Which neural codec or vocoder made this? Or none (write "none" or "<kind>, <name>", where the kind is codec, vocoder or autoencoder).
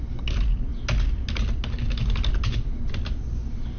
none